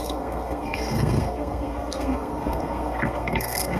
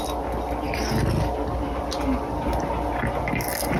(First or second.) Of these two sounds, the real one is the second